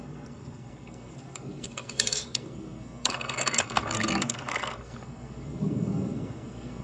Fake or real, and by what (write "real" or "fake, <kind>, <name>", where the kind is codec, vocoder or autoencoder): fake, codec, SNAC